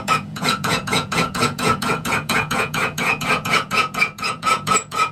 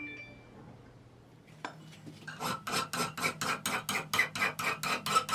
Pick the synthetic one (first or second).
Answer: first